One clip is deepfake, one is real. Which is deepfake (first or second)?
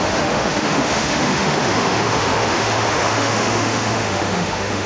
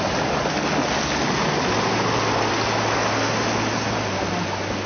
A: first